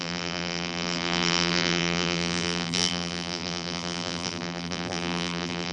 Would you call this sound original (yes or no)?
no